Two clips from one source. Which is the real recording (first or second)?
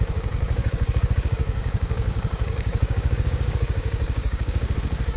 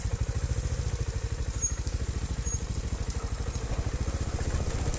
second